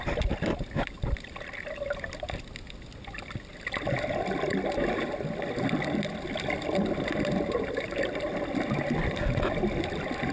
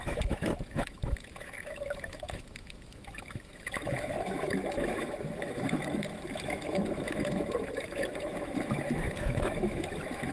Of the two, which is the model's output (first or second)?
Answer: second